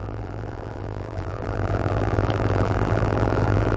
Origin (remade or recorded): remade